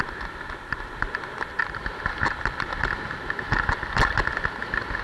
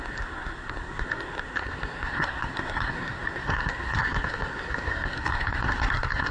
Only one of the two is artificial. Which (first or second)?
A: second